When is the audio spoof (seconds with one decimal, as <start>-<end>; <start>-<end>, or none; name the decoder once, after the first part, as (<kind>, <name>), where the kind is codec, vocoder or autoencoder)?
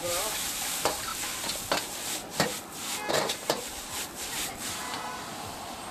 0.0-1.1 (vocoder, BigVGAN v2); 1.8-2.2; 3.1-5.9